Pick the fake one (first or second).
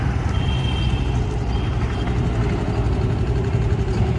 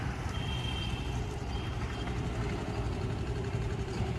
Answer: second